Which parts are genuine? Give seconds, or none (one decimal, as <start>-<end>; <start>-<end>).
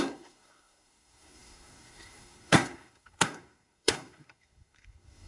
none